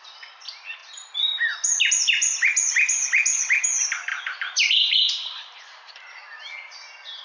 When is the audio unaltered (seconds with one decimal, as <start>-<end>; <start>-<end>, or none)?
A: 0.0-4.1; 6.5-7.2